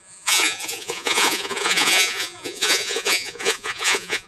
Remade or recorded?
remade